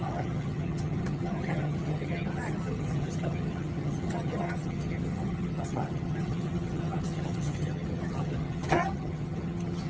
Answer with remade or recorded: remade